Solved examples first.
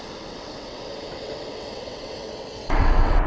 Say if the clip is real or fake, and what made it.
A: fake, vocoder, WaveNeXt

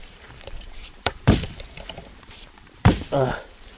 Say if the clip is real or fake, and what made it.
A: fake, vocoder, BigVGAN v2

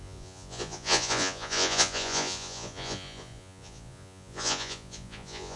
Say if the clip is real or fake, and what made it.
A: fake, vocoder, Vocos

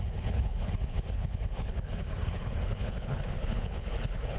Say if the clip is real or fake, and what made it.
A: fake, codec, HILCodec